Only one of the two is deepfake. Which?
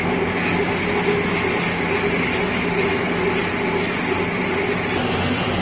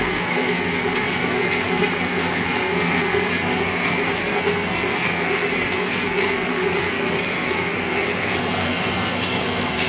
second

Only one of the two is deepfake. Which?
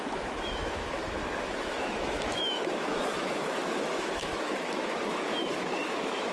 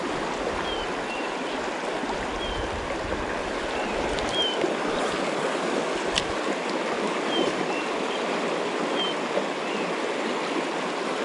first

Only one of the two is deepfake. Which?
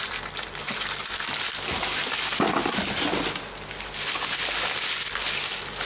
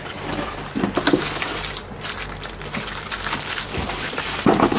second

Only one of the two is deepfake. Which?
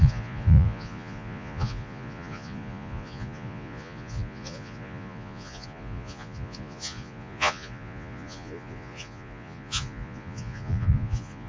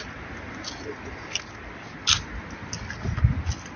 first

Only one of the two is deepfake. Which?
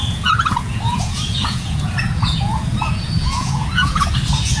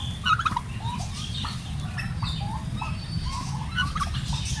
first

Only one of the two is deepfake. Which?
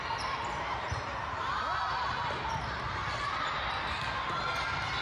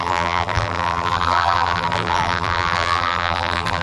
second